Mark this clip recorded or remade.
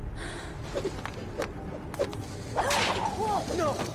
recorded